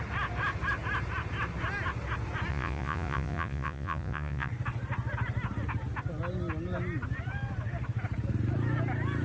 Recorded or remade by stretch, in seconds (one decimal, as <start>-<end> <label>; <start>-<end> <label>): 0.0-2.5 recorded; 2.5-4.5 remade; 4.5-9.2 recorded